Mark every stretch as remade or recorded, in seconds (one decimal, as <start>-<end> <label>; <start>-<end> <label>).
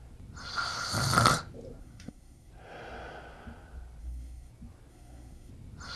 0.0-1.8 recorded; 1.8-2.5 remade; 2.5-4.0 recorded; 4.0-4.5 remade; 4.5-4.9 recorded; 4.9-5.5 remade; 5.5-6.0 recorded